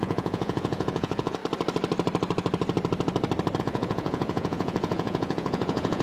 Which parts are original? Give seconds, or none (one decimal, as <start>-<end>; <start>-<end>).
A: 1.4-3.6